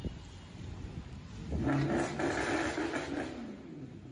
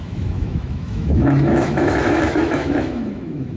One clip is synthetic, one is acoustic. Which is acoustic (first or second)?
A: first